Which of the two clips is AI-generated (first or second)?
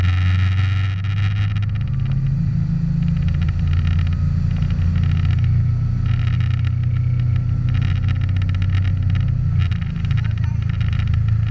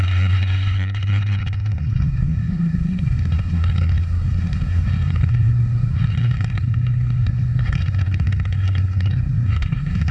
second